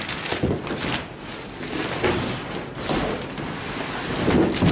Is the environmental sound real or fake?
real